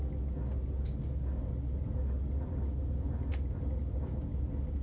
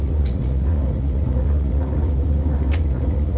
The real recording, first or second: first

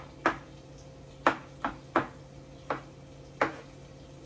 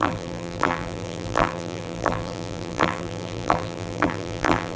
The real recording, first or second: first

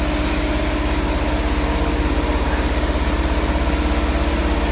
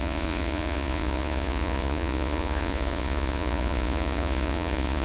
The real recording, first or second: first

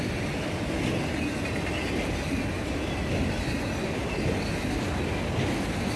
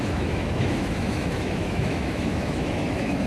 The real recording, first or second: first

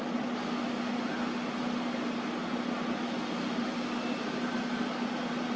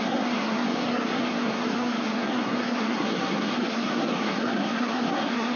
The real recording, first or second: first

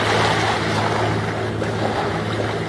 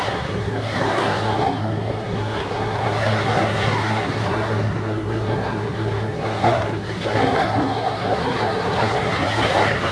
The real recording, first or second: first